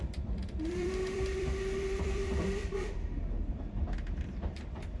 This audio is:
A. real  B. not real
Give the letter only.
B